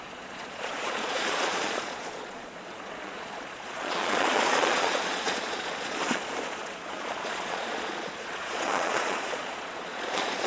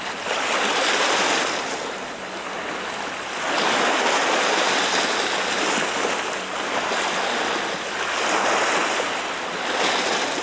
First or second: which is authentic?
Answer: second